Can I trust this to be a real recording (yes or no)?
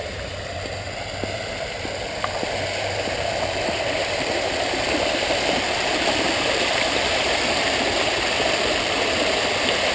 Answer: no